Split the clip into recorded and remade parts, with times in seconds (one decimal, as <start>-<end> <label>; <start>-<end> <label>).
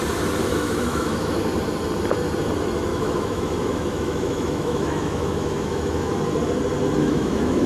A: 0.0-0.5 recorded; 0.5-1.4 remade; 1.4-2.9 recorded; 2.9-6.1 remade; 6.1-7.0 recorded; 7.0-7.7 remade